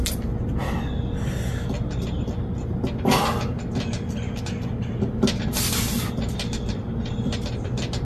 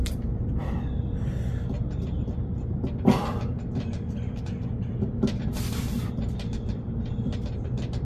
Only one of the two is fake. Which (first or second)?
second